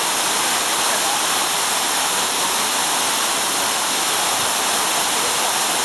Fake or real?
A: real